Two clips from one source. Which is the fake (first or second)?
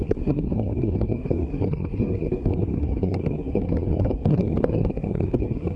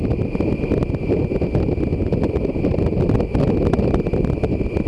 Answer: first